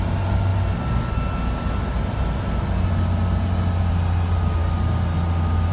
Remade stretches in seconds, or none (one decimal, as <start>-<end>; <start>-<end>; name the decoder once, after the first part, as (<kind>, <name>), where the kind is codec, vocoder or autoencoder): none